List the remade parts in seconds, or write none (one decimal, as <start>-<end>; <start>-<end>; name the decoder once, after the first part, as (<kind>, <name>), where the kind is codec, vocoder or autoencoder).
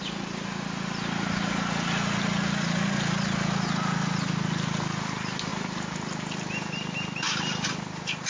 none